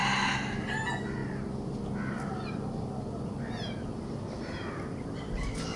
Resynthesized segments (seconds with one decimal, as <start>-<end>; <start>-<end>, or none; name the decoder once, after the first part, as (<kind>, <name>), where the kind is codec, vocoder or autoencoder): none